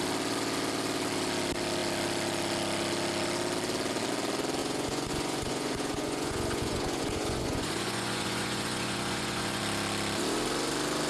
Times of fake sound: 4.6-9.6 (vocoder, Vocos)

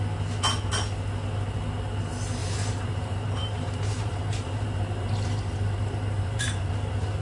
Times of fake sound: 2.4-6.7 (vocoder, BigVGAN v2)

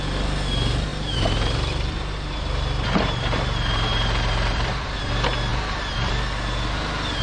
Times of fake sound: 0.9-5.1 (vocoder, BigVGAN v2); 5.5-6.1

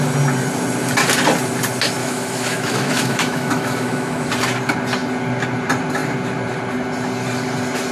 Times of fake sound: 2.0-4.3 (autoencoder, DAC-VAE)